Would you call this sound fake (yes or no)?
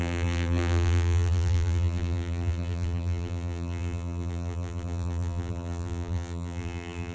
yes